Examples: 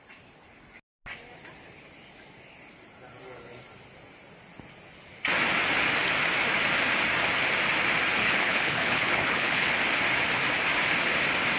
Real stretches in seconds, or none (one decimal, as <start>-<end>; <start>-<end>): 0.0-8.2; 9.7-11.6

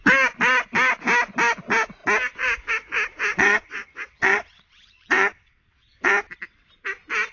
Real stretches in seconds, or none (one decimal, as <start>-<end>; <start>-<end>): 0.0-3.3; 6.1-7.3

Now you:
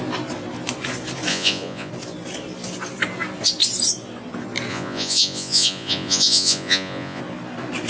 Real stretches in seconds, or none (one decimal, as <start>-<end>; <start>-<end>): 0.0-1.3; 1.9-4.7; 7.2-7.9